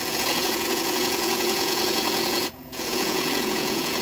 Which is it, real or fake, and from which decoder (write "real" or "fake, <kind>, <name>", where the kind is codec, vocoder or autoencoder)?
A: fake, vocoder, Vocos